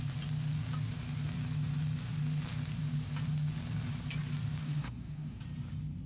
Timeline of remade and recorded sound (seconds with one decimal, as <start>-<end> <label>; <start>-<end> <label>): 0.0-4.6 recorded; 4.6-5.4 remade; 5.4-6.1 recorded